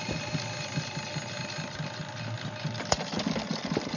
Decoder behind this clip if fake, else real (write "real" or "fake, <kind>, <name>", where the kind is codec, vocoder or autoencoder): real